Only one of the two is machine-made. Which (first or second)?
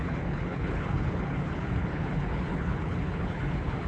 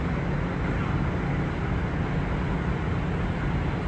first